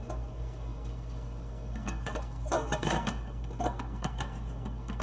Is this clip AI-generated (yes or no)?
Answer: yes